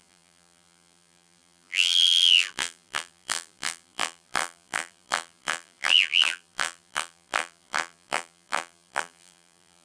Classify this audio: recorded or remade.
remade